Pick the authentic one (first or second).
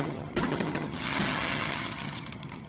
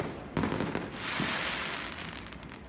second